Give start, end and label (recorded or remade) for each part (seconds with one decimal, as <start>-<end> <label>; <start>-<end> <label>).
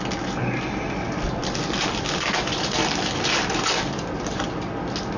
0.0-5.2 recorded